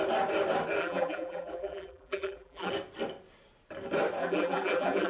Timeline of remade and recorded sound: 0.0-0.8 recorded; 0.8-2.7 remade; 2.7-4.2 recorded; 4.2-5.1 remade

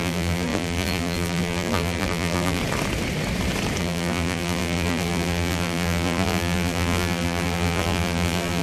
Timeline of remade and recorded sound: 0.0-2.6 remade; 2.6-3.8 recorded; 3.8-8.6 remade

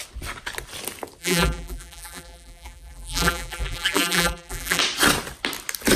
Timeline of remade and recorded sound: 0.0-1.2 recorded; 1.2-4.8 remade; 4.8-6.0 recorded

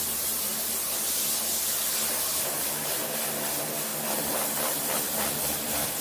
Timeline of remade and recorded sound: 0.0-2.3 recorded; 2.3-3.1 remade; 3.1-3.9 recorded; 3.9-6.0 remade